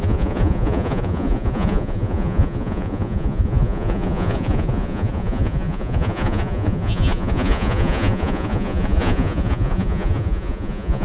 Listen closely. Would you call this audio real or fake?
fake